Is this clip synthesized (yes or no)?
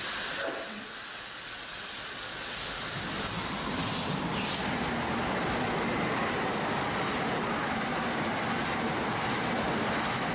no